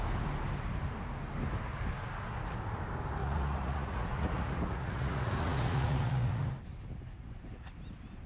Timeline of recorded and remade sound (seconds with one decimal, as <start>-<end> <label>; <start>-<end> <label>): 0.0-3.2 recorded; 3.2-6.5 remade; 6.5-8.3 recorded

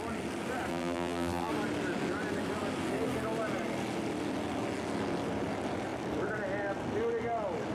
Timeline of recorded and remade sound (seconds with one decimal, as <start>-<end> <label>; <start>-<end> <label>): 0.0-0.7 recorded; 0.7-1.5 remade; 1.5-7.7 recorded

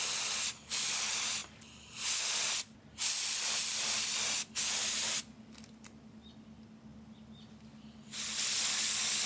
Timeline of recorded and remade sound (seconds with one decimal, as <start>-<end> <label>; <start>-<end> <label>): 0.0-9.3 recorded

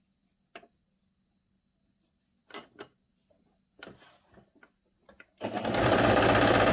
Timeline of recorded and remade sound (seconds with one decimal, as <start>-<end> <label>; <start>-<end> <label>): 0.0-6.7 recorded

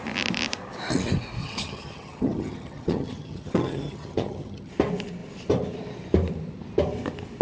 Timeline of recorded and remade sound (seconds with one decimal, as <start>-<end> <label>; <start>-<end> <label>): 0.0-1.4 recorded; 1.4-4.7 remade; 4.7-7.4 recorded

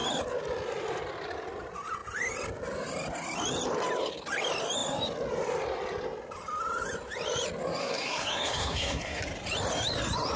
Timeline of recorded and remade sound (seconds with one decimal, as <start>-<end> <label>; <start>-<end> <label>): 0.0-7.8 recorded; 7.8-9.2 remade; 9.2-10.4 recorded

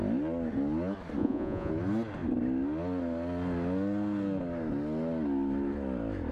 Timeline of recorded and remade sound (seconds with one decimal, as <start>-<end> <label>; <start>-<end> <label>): 0.0-1.2 recorded; 1.2-1.7 remade; 1.7-6.3 recorded